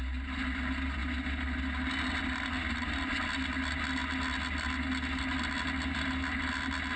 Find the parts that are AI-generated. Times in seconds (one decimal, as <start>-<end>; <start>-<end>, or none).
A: none